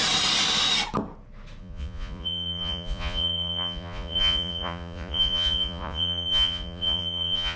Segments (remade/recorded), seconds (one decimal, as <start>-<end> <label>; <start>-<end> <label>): 0.0-1.6 recorded; 1.6-7.6 remade